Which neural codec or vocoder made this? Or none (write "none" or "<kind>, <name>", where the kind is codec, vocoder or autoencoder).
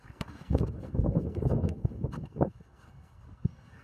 codec, SNAC